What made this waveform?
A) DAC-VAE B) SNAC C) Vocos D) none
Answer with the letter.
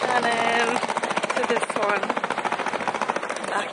D